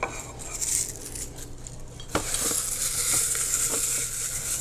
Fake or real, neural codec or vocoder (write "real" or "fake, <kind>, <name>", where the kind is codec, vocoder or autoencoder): real